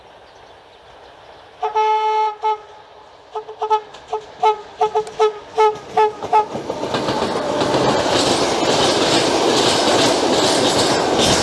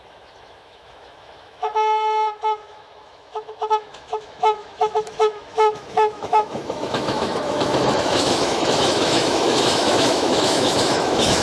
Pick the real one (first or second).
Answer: first